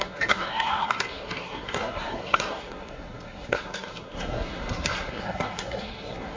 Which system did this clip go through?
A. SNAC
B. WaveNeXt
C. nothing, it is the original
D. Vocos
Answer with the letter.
A